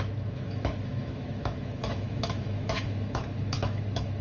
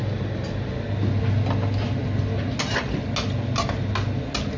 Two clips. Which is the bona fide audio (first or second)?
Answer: second